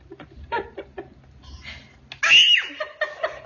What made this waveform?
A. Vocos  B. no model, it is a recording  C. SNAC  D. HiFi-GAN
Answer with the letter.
B